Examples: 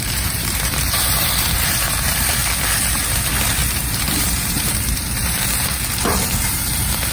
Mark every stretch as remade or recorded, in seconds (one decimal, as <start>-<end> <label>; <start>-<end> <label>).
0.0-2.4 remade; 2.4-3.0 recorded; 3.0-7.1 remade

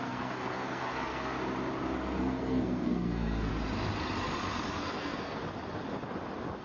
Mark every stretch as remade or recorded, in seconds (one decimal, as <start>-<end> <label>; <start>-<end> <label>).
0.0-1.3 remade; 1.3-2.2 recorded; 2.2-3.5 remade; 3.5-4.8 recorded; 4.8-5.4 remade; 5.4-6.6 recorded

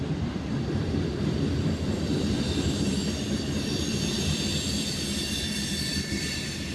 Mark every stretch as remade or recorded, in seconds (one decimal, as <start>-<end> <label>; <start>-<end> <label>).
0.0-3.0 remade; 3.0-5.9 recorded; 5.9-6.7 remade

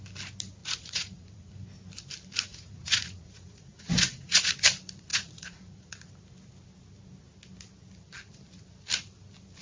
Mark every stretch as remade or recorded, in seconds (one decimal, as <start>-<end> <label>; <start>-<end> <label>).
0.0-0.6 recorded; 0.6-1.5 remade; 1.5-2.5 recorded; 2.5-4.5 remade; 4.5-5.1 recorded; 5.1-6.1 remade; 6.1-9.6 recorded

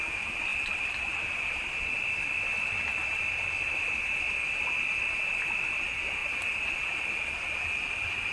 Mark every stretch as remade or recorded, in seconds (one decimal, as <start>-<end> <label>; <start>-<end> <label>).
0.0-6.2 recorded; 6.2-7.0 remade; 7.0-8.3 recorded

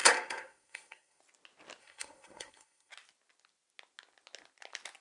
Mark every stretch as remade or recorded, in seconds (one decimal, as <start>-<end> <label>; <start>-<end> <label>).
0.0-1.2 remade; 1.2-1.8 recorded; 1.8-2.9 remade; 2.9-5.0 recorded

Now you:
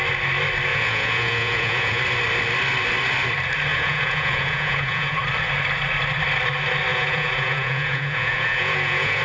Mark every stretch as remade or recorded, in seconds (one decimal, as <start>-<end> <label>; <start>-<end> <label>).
0.0-0.7 recorded; 0.7-2.0 remade; 2.0-3.7 recorded; 3.7-5.2 remade; 5.2-6.9 recorded; 6.9-9.2 remade